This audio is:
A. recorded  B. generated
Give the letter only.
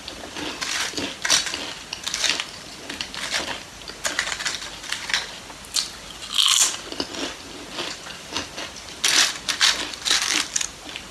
A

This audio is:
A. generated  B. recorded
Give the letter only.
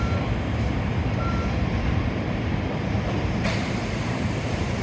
A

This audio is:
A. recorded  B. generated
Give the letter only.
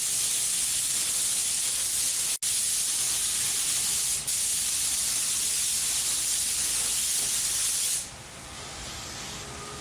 A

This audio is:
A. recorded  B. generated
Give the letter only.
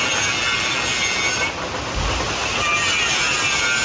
A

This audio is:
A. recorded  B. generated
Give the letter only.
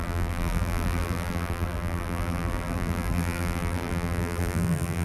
B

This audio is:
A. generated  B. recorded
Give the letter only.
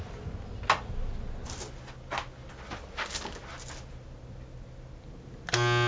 B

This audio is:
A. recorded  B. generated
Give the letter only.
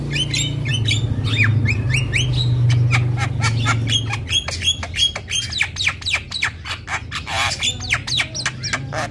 A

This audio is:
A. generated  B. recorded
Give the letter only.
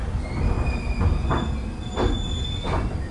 B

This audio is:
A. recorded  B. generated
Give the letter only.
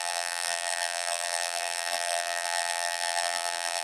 B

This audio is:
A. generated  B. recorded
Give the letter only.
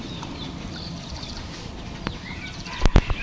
A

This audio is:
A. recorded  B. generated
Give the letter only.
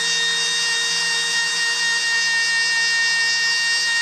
A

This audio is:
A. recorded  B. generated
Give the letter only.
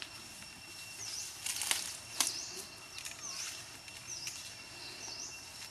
A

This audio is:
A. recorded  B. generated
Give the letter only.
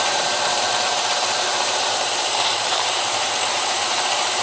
B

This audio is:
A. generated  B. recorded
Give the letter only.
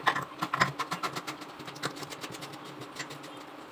B